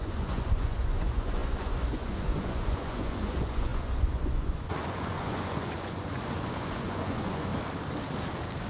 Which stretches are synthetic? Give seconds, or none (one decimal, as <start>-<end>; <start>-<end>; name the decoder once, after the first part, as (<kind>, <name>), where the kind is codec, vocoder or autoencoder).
0.0-7.5 (vocoder, Vocos)